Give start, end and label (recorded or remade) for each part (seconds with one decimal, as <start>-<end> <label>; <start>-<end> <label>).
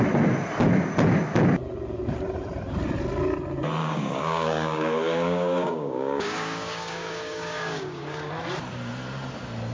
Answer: 0.0-3.8 recorded; 3.8-8.3 remade; 8.3-9.7 recorded